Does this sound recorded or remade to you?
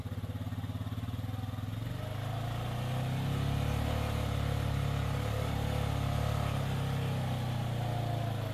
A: recorded